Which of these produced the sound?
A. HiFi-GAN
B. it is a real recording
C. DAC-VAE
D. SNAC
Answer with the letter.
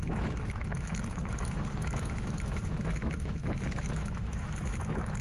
C